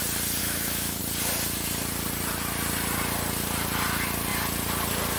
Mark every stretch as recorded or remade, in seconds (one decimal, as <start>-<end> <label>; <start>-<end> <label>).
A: 0.0-0.4 recorded; 0.4-1.0 remade; 1.0-5.2 recorded